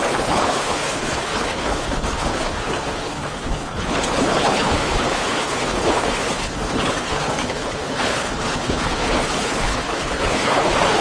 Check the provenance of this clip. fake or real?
fake